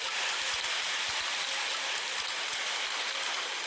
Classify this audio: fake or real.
real